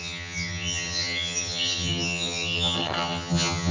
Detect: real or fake fake